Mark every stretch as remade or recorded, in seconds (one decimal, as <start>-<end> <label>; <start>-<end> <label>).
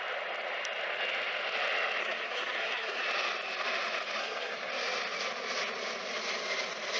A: 0.0-2.0 recorded; 2.0-3.0 remade; 3.0-4.2 recorded; 4.2-4.7 remade; 4.7-7.0 recorded